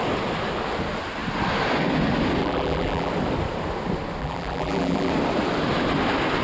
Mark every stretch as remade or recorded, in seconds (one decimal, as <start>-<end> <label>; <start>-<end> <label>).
0.0-2.4 recorded; 2.4-3.1 remade; 3.1-4.2 recorded; 4.2-5.1 remade; 5.1-6.4 recorded